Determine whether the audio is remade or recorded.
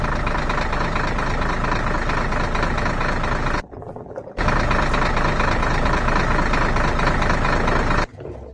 recorded